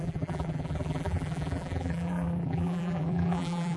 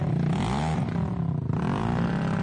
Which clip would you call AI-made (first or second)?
first